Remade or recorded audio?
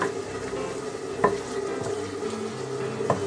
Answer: recorded